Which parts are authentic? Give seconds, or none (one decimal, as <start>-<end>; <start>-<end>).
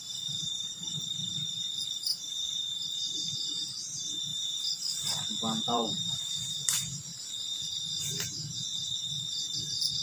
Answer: none